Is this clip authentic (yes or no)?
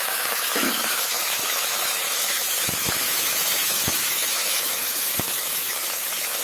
no